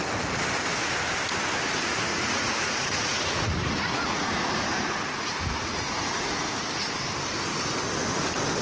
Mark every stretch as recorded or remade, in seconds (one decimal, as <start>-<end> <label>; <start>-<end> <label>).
0.0-2.1 recorded; 2.1-6.4 remade; 6.4-8.6 recorded